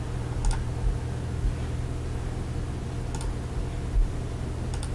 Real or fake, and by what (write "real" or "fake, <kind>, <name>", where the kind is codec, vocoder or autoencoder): real